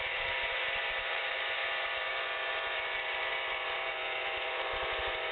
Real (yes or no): no